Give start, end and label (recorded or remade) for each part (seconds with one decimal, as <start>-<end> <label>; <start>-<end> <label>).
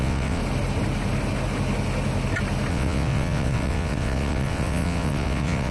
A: 0.0-0.4 remade; 0.4-2.7 recorded; 2.7-5.7 remade